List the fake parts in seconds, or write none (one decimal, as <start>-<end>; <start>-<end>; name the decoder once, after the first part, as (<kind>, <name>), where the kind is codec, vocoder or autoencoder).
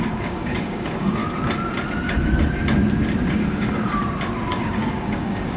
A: 0.0-1.2 (codec, DAC); 3.3-4.0; 4.5-5.6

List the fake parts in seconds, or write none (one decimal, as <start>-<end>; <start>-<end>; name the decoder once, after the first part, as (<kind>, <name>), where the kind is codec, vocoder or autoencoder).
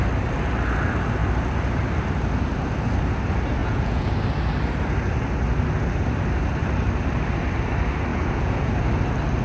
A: 3.6-4.1 (vocoder, Vocos); 8.1-8.7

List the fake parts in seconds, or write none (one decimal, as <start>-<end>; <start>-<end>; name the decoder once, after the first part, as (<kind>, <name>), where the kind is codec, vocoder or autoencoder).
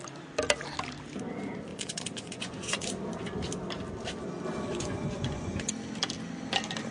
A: 1.7-2.9 (vocoder, Vocos); 4.7-5.7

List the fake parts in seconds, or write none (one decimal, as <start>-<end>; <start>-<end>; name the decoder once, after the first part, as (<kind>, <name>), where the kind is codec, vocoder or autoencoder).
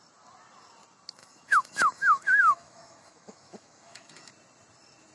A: 1.2-4.3 (autoencoder, DAC-VAE)